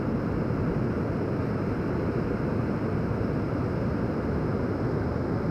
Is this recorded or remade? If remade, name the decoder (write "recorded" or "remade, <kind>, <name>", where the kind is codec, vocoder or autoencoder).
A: recorded